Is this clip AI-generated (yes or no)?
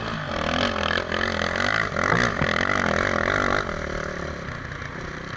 no